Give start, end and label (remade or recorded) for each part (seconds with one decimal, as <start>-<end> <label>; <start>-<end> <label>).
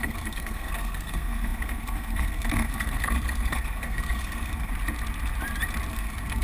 0.0-4.7 remade; 4.7-5.9 recorded; 5.9-6.4 remade